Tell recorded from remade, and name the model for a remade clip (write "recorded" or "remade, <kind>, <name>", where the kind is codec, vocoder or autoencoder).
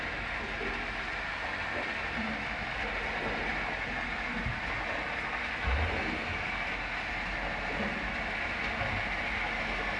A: recorded